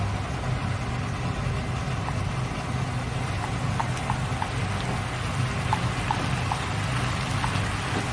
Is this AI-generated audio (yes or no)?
no